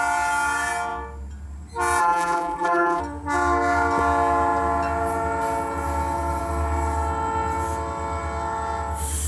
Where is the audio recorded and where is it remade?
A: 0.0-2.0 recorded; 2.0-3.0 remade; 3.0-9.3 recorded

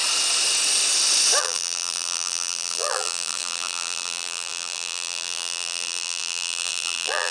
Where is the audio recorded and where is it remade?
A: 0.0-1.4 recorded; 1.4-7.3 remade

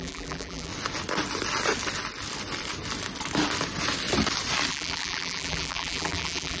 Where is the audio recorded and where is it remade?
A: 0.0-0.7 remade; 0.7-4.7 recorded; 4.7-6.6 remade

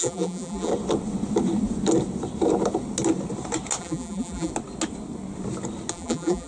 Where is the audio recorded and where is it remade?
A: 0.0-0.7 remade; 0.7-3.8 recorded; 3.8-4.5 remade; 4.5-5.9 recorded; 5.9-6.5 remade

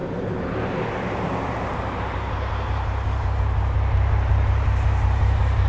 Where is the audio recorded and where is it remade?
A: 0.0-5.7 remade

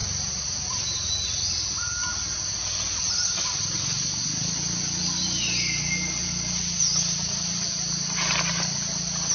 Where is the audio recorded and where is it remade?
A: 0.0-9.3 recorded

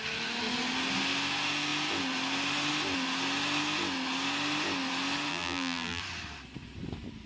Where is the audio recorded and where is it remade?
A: 0.0-5.3 recorded; 5.3-6.0 remade; 6.0-7.3 recorded